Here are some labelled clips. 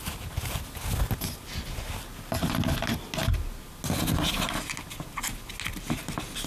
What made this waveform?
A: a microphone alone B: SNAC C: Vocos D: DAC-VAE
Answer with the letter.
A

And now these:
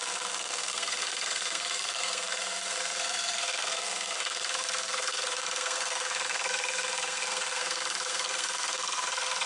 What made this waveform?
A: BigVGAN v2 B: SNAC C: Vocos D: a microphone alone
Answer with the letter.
B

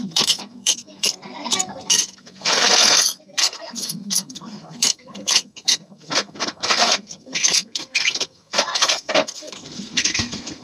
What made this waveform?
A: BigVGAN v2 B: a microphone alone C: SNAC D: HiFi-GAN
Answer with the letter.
C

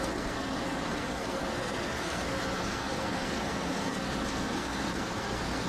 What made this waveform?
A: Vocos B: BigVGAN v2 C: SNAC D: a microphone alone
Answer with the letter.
C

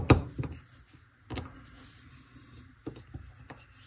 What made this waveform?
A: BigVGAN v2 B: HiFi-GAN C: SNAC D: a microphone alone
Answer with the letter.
D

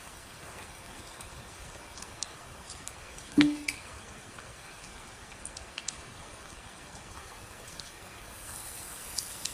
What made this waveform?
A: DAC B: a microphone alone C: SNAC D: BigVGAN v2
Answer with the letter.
C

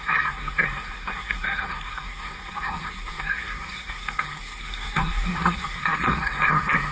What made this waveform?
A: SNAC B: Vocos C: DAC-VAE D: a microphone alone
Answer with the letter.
A